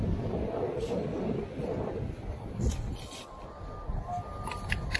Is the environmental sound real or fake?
real